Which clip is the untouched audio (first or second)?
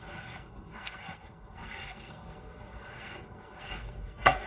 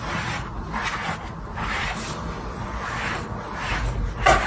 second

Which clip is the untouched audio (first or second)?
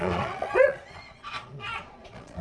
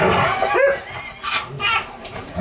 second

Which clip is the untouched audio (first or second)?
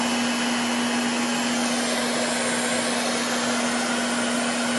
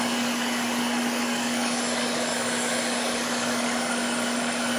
first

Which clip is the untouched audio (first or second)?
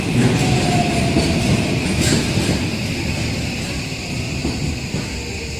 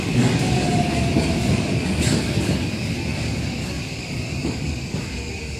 first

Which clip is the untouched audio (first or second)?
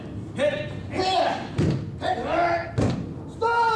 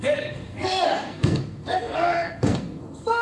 first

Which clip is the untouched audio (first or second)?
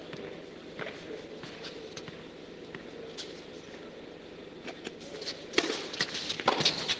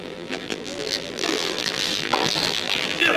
first